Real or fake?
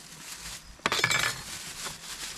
real